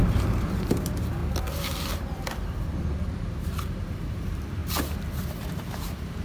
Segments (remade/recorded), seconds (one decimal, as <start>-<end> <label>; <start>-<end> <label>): 0.0-1.2 remade; 1.2-3.1 recorded; 3.1-4.6 remade; 4.6-5.3 recorded; 5.3-6.2 remade